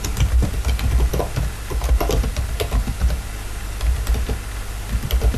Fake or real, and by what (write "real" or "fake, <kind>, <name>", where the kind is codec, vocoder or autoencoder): real